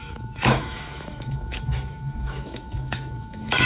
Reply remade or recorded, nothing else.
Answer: remade